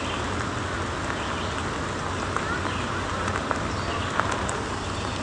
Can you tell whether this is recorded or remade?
recorded